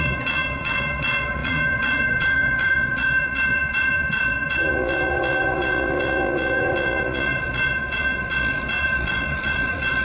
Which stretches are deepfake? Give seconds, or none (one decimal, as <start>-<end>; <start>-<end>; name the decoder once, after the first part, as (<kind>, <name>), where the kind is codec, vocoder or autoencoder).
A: 0.0-10.0 (vocoder, Vocos)